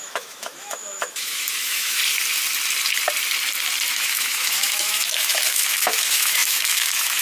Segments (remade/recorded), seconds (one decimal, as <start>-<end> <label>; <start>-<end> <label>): 0.0-2.0 remade; 2.0-3.9 recorded; 3.9-7.2 remade

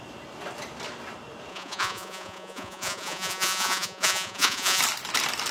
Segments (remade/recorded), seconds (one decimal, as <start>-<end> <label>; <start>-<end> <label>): 0.0-1.5 recorded; 1.5-4.8 remade; 4.8-5.5 recorded